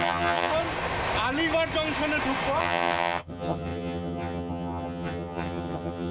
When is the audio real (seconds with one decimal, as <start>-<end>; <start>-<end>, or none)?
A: 0.5-2.6